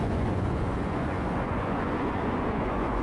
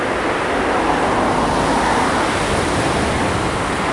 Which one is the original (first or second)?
second